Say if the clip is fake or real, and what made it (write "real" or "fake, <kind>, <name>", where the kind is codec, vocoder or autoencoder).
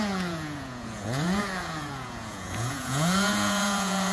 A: fake, vocoder, Vocos